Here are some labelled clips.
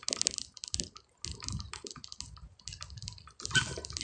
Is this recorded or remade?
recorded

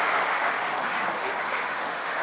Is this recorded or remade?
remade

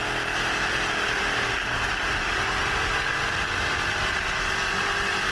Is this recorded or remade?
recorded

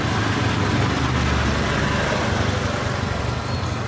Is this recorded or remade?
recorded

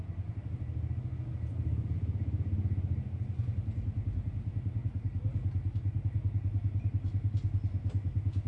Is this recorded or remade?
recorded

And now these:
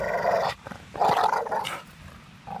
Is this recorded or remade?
recorded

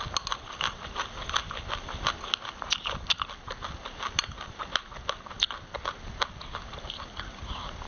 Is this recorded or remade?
recorded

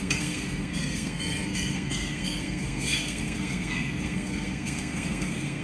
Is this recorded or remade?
remade